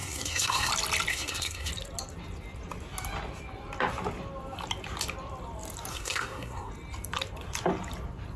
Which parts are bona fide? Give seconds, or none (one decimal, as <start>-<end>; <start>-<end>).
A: 0.7-1.1; 1.7-5.9; 6.7-8.4